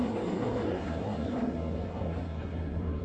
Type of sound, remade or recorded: remade